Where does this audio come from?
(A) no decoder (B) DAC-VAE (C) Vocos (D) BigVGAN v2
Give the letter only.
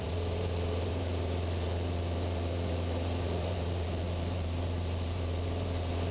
D